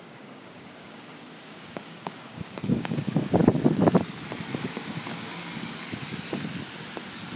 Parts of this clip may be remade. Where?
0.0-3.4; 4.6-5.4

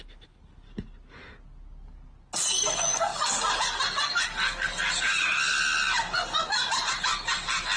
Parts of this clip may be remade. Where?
none

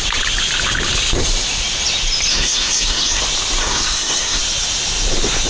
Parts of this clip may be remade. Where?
2.3-3.2; 3.6-4.4

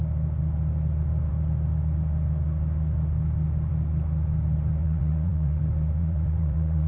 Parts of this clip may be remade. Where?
4.8-5.6; 6.0-6.9

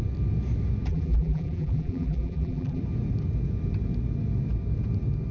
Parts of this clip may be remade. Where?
0.9-2.8

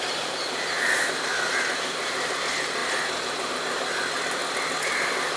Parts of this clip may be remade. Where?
none